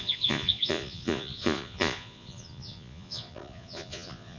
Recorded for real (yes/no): no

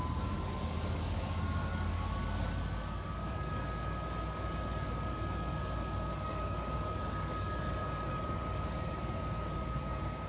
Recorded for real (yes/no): no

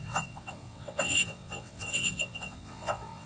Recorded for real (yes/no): no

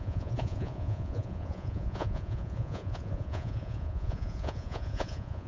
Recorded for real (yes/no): no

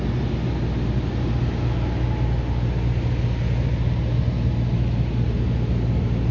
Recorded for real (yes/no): yes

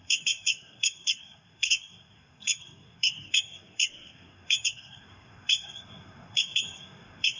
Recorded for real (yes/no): no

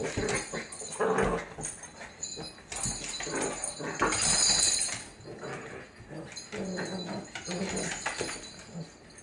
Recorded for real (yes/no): yes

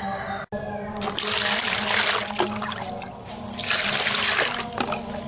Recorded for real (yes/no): yes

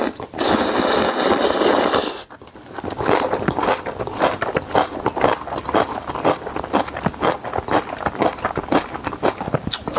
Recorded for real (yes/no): yes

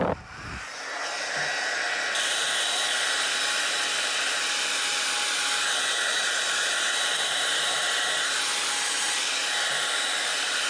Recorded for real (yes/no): yes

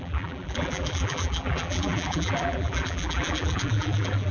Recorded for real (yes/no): no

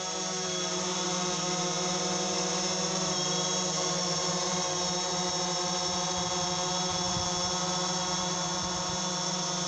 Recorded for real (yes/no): no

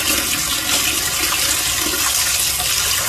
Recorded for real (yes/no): yes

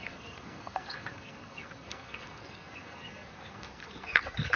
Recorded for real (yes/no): no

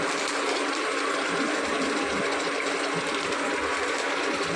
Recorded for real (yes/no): yes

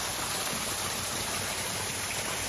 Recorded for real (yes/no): no